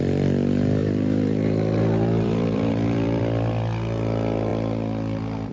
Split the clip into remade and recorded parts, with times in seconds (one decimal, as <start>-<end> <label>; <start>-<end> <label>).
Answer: 0.0-0.8 recorded; 0.8-3.2 remade; 3.2-5.5 recorded